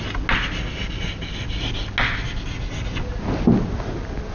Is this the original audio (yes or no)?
yes